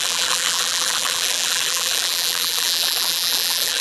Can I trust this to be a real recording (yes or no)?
no